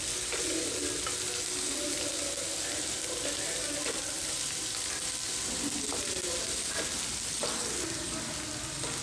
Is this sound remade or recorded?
recorded